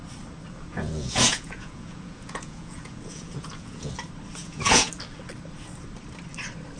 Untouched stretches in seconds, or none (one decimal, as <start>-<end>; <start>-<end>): 0.0-0.7; 3.9-4.4; 4.9-6.8